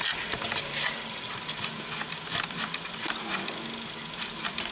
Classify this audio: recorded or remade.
recorded